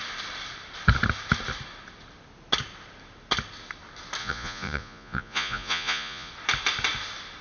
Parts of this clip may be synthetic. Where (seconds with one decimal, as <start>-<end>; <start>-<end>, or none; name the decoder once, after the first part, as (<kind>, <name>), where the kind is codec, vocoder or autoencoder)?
4.2-6.3 (vocoder, Vocos)